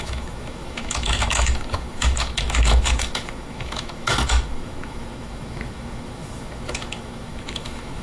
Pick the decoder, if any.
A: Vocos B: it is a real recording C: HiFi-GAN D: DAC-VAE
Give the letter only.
D